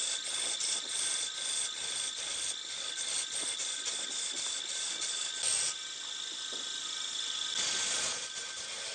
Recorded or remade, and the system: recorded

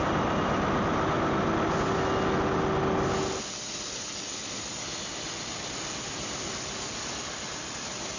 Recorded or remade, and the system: recorded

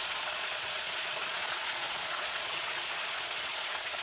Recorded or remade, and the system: remade, vocoder, Vocos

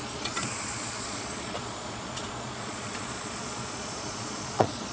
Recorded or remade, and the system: remade, vocoder, Vocos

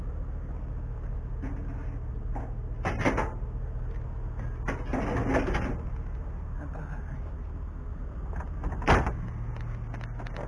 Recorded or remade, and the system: recorded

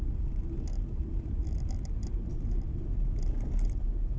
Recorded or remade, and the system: recorded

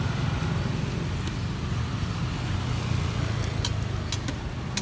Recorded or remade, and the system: recorded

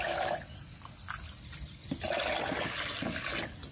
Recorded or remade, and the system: recorded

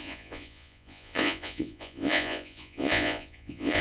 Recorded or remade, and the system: remade, vocoder, Vocos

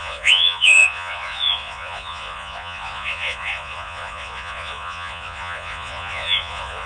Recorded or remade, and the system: remade, vocoder, Vocos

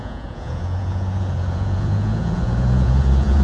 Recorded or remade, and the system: remade, vocoder, Vocos